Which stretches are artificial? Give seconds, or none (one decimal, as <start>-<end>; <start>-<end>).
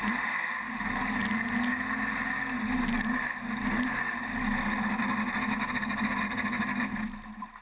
none